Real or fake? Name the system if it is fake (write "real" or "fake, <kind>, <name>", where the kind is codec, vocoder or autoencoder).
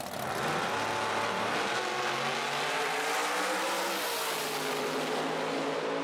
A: real